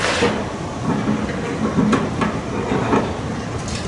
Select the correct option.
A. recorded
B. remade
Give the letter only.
A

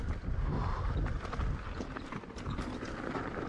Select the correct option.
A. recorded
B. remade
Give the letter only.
B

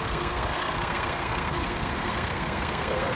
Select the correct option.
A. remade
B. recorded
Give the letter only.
A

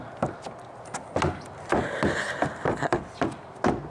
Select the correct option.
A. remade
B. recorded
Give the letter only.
B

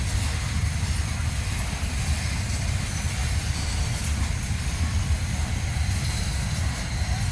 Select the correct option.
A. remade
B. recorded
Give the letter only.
B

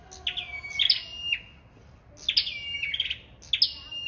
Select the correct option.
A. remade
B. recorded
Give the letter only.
B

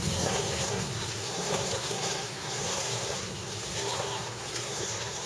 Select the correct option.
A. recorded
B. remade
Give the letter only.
B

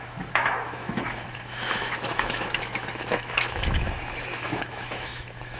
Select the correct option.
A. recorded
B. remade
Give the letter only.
B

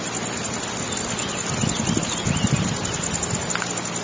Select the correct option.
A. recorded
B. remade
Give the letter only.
A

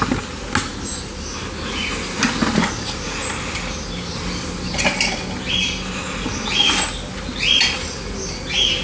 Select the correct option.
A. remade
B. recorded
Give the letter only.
B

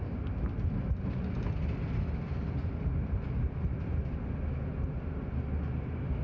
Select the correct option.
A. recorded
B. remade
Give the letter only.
A